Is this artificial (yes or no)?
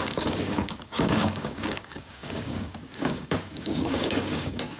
yes